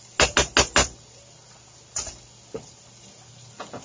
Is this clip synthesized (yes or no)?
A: no